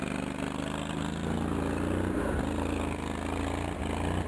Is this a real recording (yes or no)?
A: yes